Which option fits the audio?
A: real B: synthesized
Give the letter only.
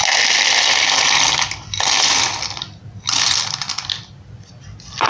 A